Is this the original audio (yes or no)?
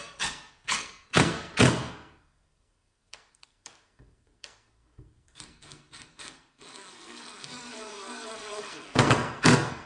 no